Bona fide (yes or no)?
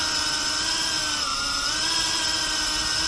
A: yes